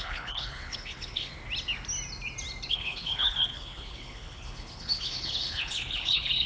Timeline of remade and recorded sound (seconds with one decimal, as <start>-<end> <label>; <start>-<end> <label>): 0.0-1.3 remade; 1.3-2.7 recorded; 2.7-6.5 remade